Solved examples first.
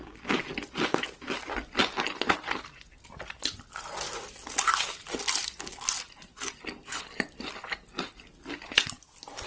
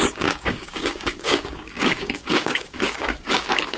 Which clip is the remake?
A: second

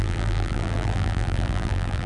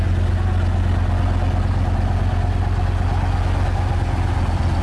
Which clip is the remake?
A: first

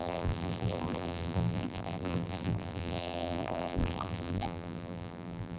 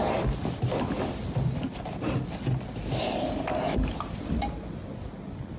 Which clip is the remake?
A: first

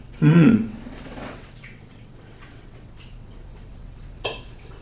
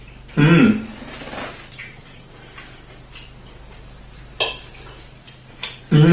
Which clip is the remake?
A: first